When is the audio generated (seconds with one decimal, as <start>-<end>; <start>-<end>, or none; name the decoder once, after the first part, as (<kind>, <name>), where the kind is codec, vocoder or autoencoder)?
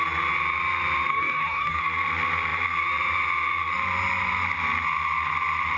1.1-1.8 (codec, DAC)